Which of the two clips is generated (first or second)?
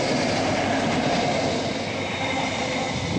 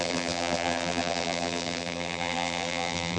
second